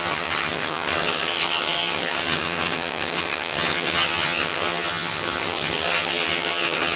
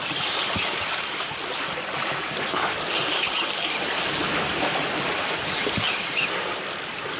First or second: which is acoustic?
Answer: second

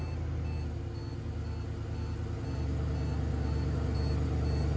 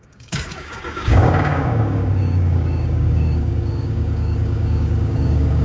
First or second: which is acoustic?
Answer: first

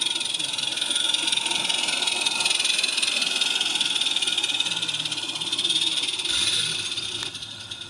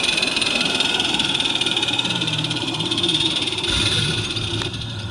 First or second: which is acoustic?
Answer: first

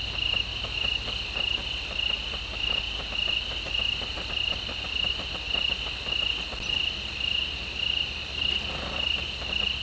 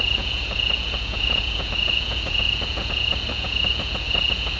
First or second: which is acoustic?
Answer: first